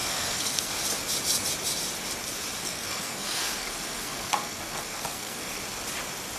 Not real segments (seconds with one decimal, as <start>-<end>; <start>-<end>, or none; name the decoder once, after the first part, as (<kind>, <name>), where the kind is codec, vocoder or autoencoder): 0.0-0.7 (codec, SNAC); 2.6-5.6